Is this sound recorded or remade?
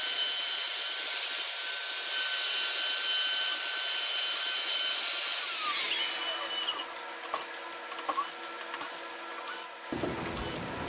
recorded